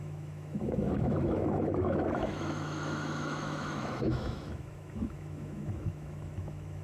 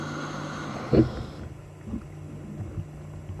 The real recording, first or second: second